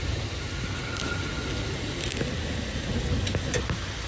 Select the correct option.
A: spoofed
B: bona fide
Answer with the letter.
B